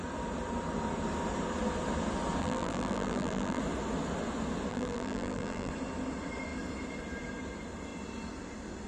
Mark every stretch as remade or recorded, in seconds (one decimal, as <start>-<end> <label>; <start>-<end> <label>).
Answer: 0.0-2.4 recorded; 2.4-3.6 remade; 3.6-4.7 recorded; 4.7-5.7 remade; 5.7-8.9 recorded